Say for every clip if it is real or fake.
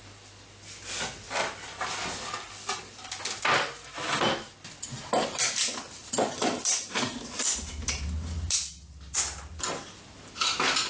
real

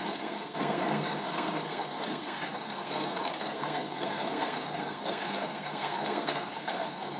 fake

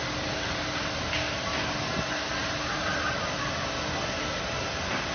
real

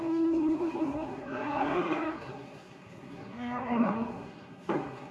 fake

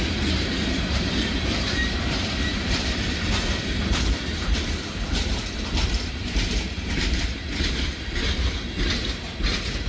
fake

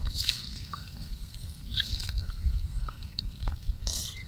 fake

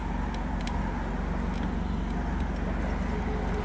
real